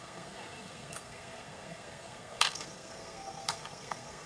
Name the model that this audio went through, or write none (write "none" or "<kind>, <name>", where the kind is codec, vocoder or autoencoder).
codec, SNAC